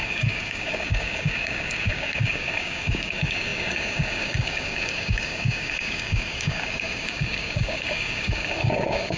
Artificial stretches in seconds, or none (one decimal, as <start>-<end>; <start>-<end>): 0.0-9.2